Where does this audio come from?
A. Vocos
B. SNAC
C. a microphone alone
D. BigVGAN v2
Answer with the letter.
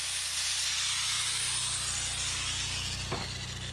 C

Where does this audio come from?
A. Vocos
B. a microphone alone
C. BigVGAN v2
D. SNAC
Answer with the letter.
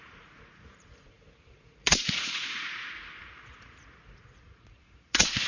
A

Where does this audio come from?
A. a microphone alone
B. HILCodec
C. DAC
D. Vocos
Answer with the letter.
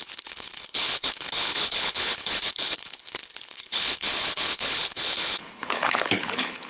B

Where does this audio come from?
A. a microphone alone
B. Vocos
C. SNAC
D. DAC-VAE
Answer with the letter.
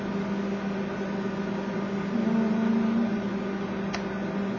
A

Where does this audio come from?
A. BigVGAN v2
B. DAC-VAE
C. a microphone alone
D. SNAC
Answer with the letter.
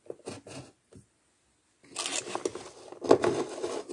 C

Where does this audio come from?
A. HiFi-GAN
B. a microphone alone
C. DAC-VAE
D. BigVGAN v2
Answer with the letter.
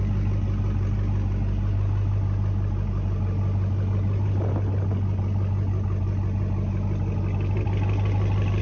B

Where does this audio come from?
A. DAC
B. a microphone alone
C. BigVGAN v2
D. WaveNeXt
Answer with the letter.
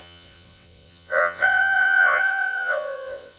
D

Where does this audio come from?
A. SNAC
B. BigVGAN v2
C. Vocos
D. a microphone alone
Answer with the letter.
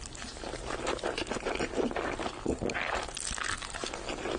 D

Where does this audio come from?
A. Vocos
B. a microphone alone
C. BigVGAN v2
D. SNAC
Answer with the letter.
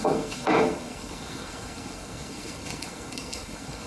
D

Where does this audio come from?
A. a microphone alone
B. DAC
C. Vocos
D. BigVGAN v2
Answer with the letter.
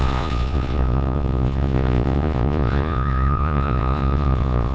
C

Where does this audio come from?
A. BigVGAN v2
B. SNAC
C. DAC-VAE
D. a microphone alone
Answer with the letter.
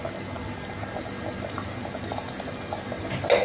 D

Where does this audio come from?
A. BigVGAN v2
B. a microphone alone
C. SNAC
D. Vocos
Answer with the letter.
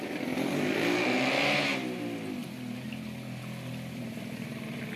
B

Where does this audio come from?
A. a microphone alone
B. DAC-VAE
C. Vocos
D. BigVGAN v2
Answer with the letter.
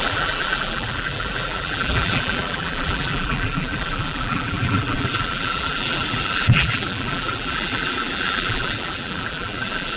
D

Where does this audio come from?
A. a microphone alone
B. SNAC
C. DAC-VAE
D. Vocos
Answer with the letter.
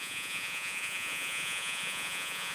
D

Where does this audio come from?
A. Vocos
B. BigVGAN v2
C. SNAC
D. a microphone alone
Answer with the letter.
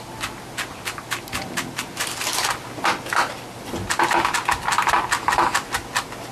D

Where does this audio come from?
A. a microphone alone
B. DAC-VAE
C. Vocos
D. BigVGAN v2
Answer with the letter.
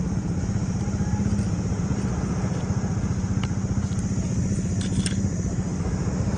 A